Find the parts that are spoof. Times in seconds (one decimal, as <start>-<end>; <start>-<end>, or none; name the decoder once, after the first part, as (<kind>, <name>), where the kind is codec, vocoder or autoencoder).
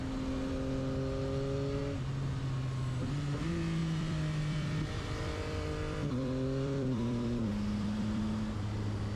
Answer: 3.8-8.2 (vocoder, BigVGAN v2)